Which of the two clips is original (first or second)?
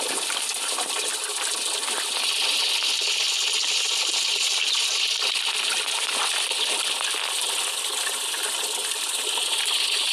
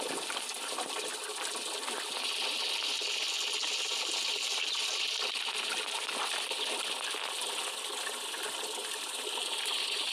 second